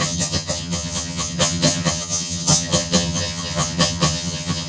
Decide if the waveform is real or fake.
fake